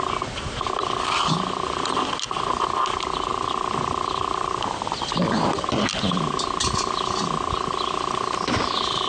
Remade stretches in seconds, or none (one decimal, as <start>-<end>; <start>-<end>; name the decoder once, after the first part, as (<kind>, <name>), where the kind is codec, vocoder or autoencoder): 3.3-5.8 (vocoder, BigVGAN v2)